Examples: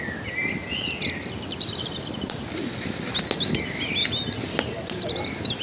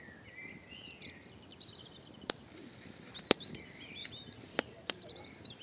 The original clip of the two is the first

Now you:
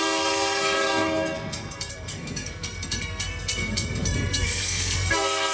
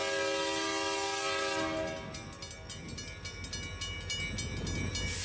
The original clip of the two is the second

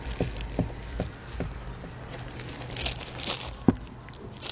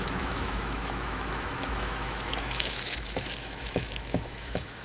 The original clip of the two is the first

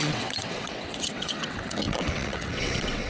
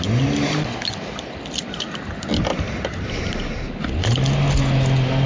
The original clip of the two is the second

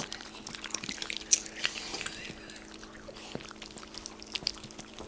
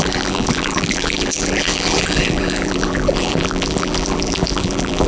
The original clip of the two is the first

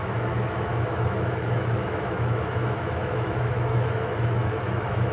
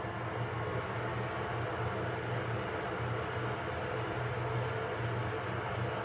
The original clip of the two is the second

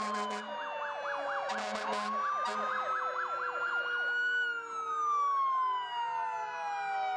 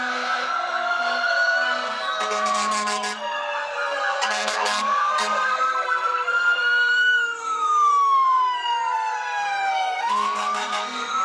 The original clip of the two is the first